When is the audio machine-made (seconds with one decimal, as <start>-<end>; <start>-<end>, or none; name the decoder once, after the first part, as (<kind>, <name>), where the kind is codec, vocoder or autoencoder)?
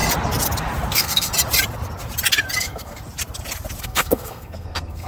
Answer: 0.9-1.3 (codec, SNAC); 2.6-3.0; 3.8-5.1